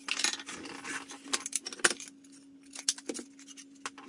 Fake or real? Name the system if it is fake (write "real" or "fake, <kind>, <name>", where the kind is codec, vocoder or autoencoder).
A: real